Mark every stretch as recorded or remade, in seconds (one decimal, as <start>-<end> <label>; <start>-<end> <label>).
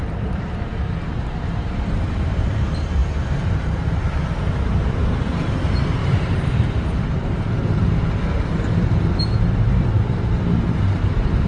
0.0-11.5 remade